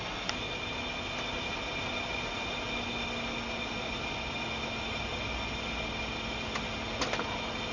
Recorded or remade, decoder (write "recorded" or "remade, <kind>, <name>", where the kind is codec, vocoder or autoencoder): recorded